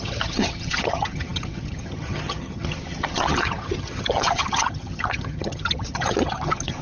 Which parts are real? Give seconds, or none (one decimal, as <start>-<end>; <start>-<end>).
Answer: none